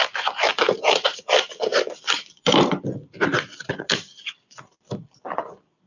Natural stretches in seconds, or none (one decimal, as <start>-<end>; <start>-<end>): 0.0-1.7; 3.7-5.9